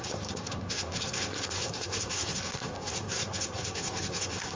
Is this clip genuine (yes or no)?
no